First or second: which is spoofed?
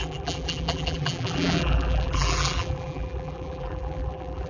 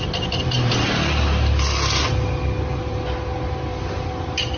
first